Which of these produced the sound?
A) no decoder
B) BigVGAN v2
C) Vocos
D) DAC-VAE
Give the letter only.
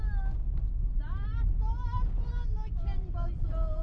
A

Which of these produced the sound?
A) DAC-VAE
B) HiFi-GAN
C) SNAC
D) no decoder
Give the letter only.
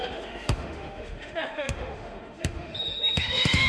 A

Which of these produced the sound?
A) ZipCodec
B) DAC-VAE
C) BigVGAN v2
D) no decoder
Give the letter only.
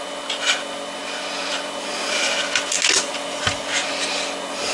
D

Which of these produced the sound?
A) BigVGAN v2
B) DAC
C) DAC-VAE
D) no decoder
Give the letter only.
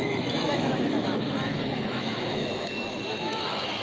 C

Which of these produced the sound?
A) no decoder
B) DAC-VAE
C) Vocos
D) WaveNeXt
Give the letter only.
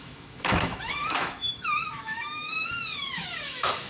B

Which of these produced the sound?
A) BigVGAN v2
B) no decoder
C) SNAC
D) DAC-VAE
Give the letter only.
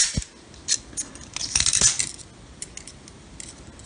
B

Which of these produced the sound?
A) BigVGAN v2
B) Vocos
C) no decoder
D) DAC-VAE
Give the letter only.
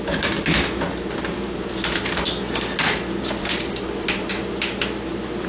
C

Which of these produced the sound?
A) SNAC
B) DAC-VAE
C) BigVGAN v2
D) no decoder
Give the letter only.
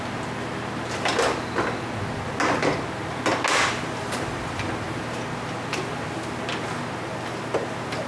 D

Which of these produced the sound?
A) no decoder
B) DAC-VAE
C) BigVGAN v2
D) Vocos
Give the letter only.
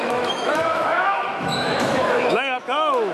B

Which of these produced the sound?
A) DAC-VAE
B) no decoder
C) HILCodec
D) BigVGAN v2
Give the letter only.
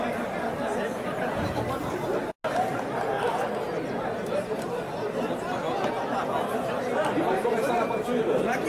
B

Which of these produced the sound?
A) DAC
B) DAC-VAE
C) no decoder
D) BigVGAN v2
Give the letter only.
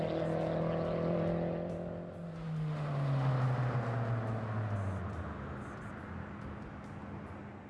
C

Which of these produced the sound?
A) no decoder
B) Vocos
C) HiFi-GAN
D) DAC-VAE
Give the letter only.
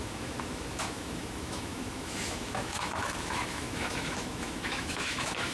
D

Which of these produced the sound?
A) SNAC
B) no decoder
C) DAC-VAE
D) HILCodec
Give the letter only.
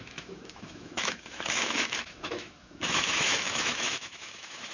C